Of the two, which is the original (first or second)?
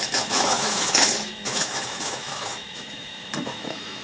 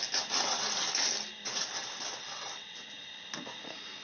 second